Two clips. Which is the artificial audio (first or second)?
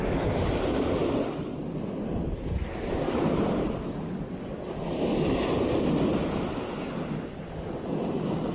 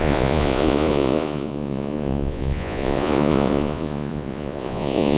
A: second